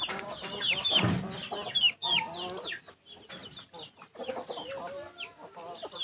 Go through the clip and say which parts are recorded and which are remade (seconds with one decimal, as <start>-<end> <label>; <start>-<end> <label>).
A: 0.0-6.0 recorded